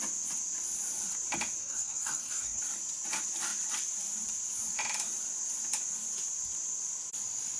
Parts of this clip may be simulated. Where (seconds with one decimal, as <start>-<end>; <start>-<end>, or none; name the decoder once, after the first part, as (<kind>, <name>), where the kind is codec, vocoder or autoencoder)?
1.6-2.6 (codec, SNAC)